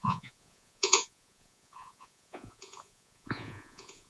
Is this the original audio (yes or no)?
no